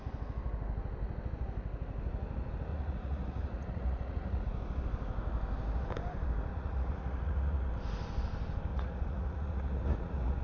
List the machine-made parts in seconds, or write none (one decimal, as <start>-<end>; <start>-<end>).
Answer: 2.7-4.4; 6.5-7.7; 8.7-10.4